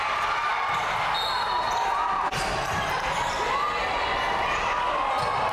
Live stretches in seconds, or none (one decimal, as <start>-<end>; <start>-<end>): 0.0-5.5